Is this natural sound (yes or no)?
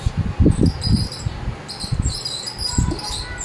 yes